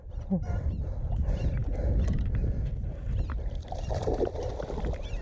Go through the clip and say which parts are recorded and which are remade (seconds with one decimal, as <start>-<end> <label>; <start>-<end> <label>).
0.0-5.2 remade